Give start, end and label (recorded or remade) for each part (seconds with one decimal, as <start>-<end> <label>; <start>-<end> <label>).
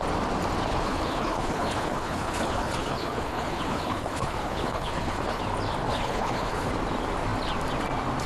0.0-0.7 recorded; 0.7-5.4 remade; 5.4-5.9 recorded; 5.9-6.7 remade; 6.7-8.3 recorded